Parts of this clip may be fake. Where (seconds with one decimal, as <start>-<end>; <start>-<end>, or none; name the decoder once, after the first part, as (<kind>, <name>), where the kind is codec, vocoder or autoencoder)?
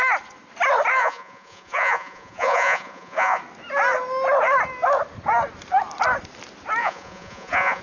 1.0-3.4 (vocoder, Vocos); 6.8-7.8